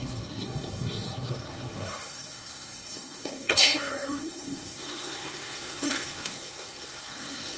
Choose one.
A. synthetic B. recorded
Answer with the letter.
A